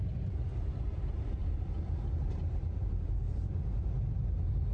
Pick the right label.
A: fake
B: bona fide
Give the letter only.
B